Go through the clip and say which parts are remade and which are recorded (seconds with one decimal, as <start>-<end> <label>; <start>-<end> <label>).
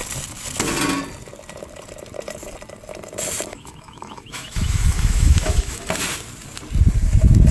0.0-3.5 recorded; 3.5-5.9 remade; 5.9-7.5 recorded